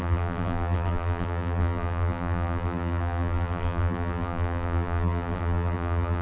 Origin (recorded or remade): remade